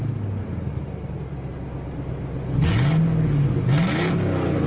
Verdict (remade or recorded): recorded